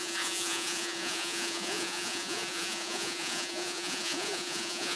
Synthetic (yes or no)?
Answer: yes